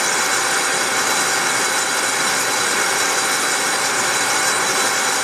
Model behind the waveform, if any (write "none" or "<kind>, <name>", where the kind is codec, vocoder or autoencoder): none